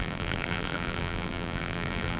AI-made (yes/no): yes